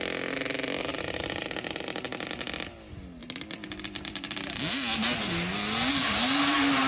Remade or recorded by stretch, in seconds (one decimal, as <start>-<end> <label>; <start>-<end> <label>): 0.0-0.9 recorded; 0.9-1.8 remade; 1.8-6.9 recorded